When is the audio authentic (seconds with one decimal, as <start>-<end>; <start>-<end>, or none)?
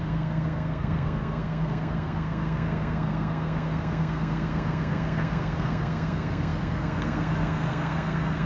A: none